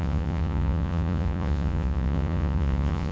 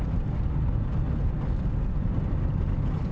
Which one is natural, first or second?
second